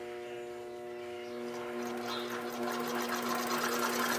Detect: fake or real real